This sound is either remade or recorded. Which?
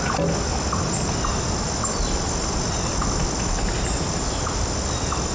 recorded